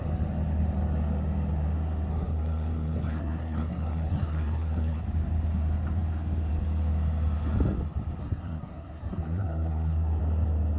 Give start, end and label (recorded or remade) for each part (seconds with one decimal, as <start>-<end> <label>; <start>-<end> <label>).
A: 0.0-2.1 recorded; 2.1-5.0 remade; 5.0-8.2 recorded; 8.2-10.2 remade; 10.2-10.8 recorded